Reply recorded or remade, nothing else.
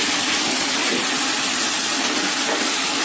recorded